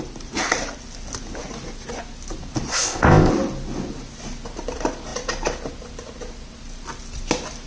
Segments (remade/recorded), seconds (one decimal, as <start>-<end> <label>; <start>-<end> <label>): 0.0-2.7 recorded; 2.7-3.3 remade; 3.3-7.7 recorded